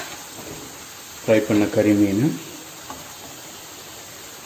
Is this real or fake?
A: real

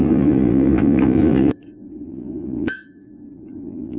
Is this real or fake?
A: fake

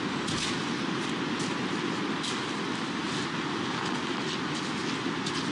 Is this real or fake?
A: real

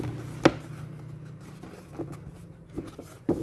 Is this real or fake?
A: real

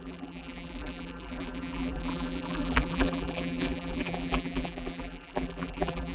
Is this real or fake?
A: fake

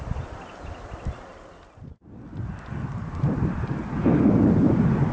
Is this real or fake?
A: real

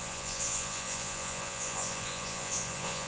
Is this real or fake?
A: fake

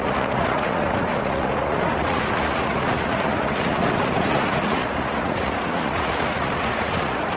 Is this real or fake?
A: fake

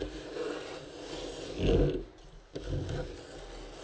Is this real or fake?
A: real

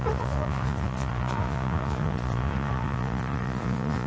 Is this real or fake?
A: fake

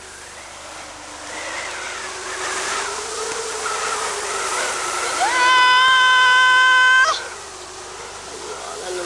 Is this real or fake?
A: real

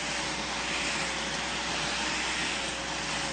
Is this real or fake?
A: real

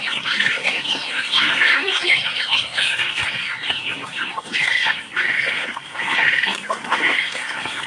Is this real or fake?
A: fake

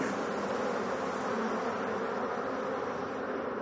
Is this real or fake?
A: real